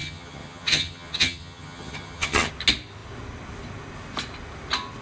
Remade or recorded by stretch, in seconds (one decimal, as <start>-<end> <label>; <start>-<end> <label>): 0.0-2.5 remade; 2.5-5.0 recorded

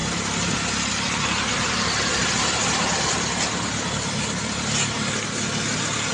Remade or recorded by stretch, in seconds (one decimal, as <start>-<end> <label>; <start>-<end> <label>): 0.0-6.1 recorded